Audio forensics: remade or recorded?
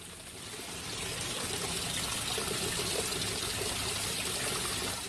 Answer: recorded